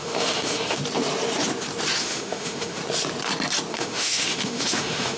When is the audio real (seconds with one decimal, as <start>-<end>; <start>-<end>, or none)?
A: 0.8-2.0; 2.8-3.7